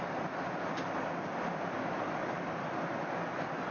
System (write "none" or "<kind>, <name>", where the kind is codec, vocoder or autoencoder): none